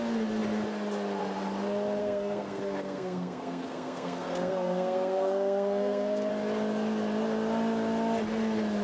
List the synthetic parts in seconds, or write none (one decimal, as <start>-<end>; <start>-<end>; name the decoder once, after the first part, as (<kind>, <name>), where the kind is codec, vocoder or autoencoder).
2.0-6.3 (codec, SNAC)